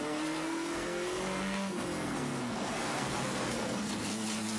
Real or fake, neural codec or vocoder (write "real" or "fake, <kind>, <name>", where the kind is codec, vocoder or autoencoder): fake, codec, SNAC